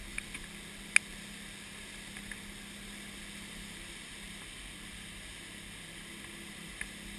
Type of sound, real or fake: real